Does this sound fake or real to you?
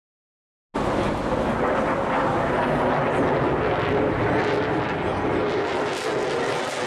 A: real